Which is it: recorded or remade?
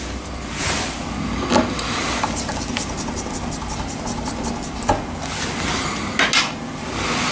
recorded